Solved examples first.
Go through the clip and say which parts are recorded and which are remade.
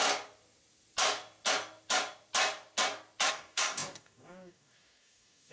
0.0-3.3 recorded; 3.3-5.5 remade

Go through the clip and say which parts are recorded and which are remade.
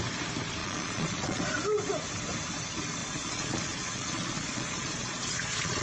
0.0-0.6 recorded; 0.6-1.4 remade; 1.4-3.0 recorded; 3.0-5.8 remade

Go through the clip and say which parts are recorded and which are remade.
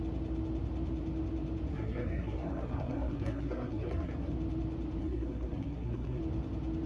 0.0-1.7 recorded; 1.7-4.3 remade; 4.3-5.0 recorded; 5.0-6.2 remade; 6.2-6.9 recorded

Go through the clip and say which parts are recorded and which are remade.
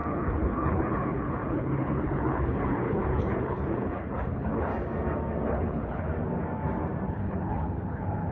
0.0-4.7 remade; 4.7-5.5 recorded; 5.5-6.1 remade; 6.1-7.1 recorded; 7.1-8.3 remade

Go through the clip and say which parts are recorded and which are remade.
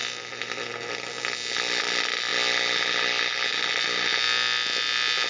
0.0-5.3 recorded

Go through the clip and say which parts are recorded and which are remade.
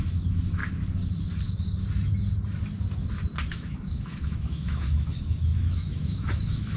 0.0-0.6 remade; 0.6-3.5 recorded; 3.5-6.8 remade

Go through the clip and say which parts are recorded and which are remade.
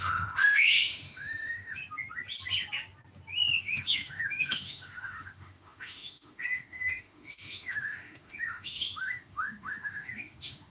0.0-1.8 remade; 1.8-3.6 recorded; 3.6-10.7 remade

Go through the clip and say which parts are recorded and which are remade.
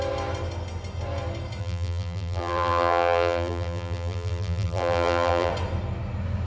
0.0-1.6 recorded; 1.6-5.5 remade; 5.5-6.5 recorded